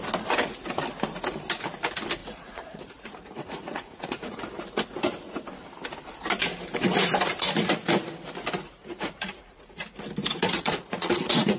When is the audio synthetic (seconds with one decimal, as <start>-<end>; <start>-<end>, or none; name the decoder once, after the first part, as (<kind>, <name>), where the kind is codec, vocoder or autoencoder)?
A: 2.2-4.4 (vocoder, Vocos); 8.8-9.8; 10.4-11.6